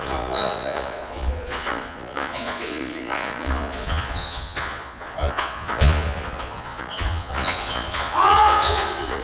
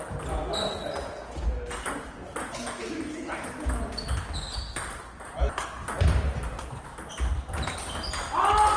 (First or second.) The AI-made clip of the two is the first